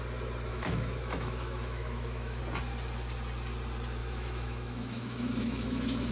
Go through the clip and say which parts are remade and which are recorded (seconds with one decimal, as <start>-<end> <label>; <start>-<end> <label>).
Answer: 0.0-0.5 recorded; 0.5-2.4 remade; 2.4-4.0 recorded; 4.0-6.1 remade